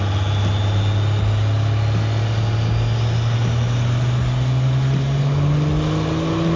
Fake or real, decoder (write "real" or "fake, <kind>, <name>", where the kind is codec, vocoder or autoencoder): real